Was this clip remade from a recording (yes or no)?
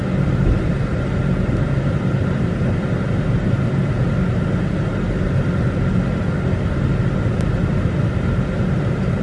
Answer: no